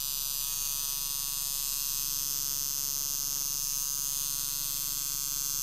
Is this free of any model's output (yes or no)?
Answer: yes